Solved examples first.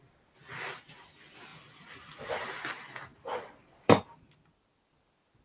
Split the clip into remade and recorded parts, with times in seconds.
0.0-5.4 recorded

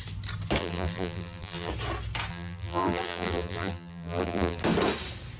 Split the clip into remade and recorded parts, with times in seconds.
0.0-0.6 recorded; 0.6-1.7 remade; 1.7-2.3 recorded; 2.3-4.6 remade; 4.6-5.4 recorded

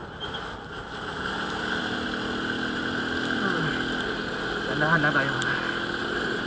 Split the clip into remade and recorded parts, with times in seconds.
0.0-1.0 remade; 1.0-6.0 recorded; 6.0-6.5 remade

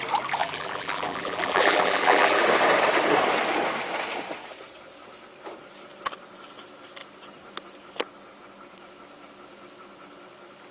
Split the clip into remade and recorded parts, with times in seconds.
0.0-0.4 recorded; 0.4-2.4 remade; 2.4-10.7 recorded

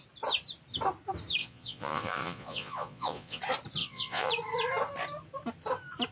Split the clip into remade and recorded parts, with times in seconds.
0.0-1.4 recorded; 1.4-3.4 remade; 3.4-3.8 recorded; 3.8-4.3 remade; 4.3-6.1 recorded